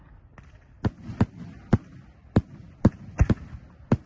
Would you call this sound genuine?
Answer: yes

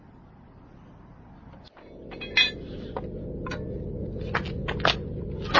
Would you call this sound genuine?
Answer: yes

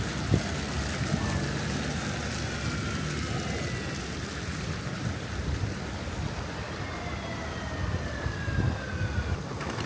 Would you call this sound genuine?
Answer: yes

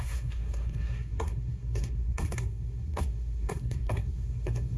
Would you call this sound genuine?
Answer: no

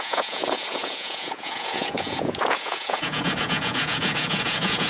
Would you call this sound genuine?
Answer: no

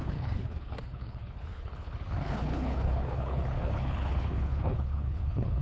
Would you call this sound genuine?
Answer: no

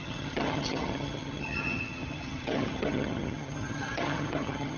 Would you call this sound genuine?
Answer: no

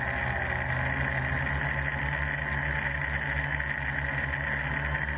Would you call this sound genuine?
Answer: yes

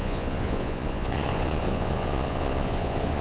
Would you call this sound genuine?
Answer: no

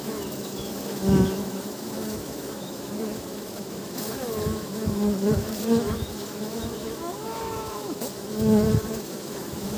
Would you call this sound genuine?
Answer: no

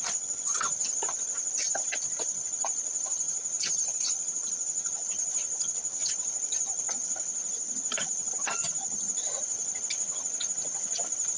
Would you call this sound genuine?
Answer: no